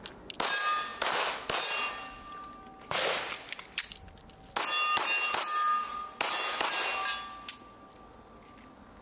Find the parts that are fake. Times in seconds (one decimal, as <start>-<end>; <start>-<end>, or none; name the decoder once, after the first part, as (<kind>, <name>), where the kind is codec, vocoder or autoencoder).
none